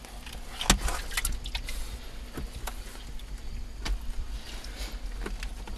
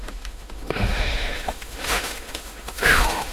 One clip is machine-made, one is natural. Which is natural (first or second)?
first